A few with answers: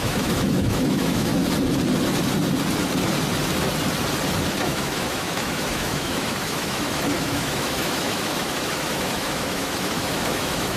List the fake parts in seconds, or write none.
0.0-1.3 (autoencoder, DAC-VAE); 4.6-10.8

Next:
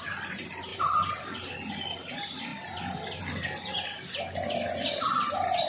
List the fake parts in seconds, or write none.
0.7-1.3 (vocoder, BigVGAN v2); 2.5-3.2

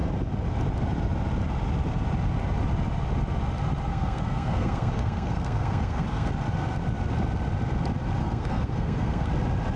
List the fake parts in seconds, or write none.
3.9-6.3 (codec, SNAC); 8.2-9.3

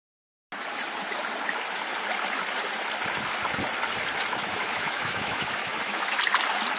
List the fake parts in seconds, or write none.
4.3-6.2 (autoencoder, DAC-VAE)

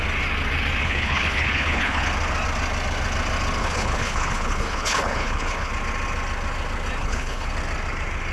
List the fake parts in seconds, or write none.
0.8-2.0 (codec, HILCodec); 3.6-5.7; 7.0-7.5

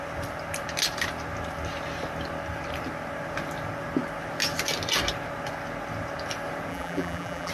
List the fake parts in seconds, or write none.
6.7-7.5 (vocoder, BigVGAN v2)